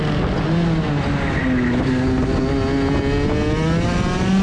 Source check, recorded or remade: recorded